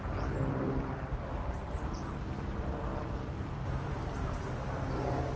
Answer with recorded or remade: remade